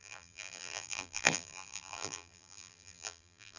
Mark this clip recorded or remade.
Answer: remade